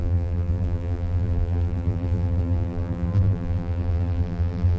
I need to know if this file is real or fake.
fake